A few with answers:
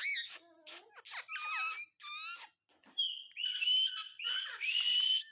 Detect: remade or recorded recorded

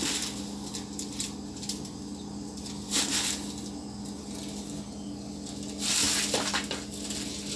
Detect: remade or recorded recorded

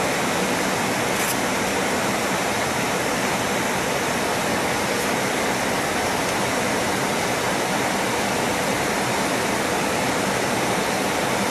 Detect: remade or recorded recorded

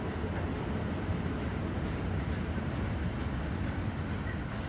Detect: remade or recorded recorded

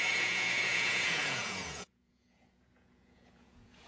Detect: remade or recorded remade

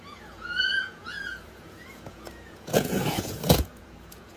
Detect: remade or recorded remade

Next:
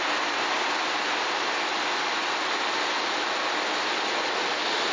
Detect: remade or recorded recorded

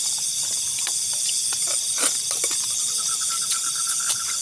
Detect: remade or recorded recorded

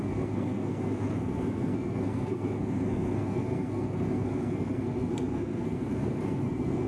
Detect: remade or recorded remade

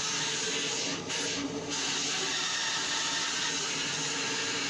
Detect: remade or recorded recorded